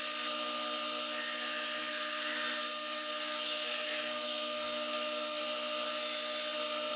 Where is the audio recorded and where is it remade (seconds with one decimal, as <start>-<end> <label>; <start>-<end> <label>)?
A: 0.0-1.8 recorded; 1.8-5.4 remade; 5.4-7.0 recorded